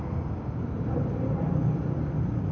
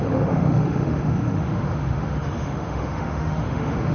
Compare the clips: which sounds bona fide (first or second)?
first